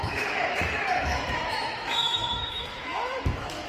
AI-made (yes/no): yes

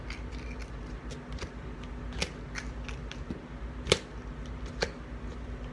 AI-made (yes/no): no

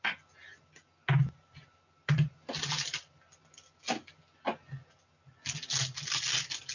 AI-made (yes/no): no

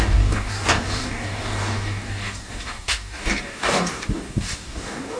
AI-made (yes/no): yes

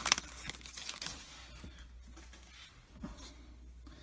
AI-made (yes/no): no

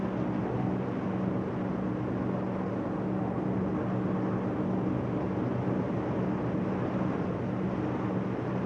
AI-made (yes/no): no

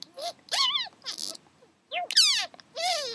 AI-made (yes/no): no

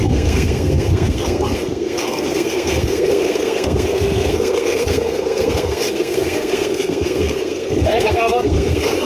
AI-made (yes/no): yes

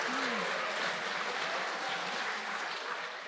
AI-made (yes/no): no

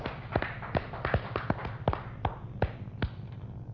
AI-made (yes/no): no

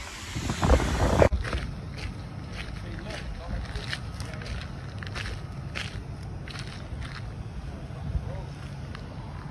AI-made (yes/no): no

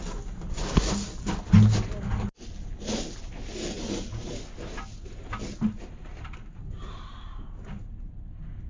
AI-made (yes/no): no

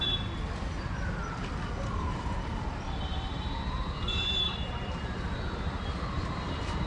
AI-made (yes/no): yes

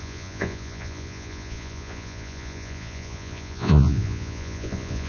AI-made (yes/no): yes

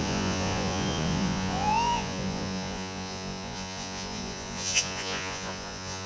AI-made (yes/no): yes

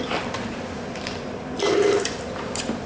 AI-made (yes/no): yes